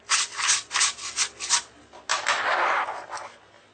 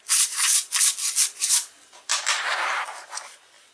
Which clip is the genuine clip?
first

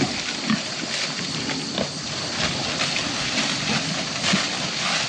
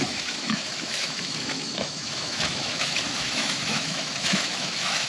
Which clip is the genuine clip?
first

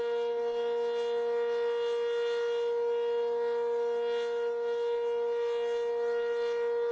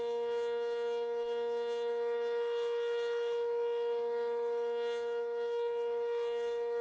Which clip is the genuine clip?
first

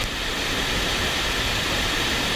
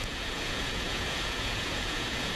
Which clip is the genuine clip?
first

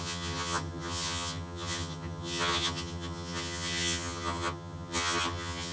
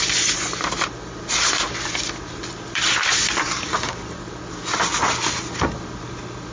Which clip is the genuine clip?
second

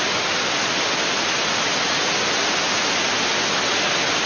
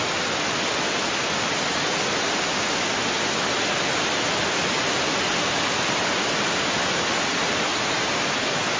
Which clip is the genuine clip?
first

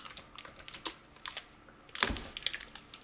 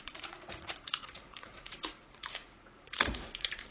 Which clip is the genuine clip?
first